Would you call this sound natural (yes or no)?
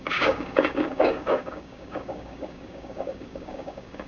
no